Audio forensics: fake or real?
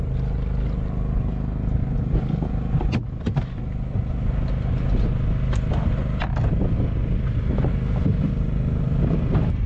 real